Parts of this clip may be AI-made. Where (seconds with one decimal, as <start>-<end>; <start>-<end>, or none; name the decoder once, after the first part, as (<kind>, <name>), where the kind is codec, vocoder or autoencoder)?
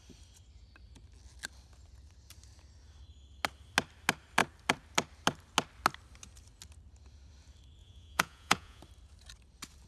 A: 7.8-8.8 (vocoder, Vocos)